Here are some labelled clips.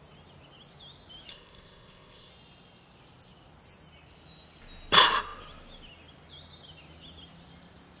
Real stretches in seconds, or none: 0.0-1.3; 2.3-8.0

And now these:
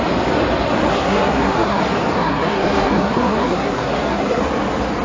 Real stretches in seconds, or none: 0.0-0.9; 1.8-2.2; 4.4-5.0